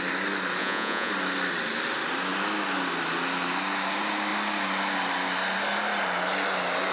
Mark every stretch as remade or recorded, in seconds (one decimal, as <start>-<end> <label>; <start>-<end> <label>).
0.0-0.6 recorded; 0.6-1.1 remade; 1.1-6.9 recorded